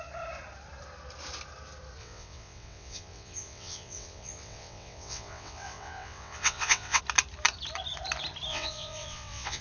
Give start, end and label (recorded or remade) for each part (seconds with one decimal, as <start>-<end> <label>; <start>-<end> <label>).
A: 0.0-2.0 recorded; 2.0-7.0 remade; 7.0-8.5 recorded; 8.5-9.6 remade